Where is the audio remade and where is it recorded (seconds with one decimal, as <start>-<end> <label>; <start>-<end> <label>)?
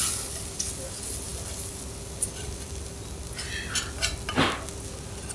0.0-5.3 recorded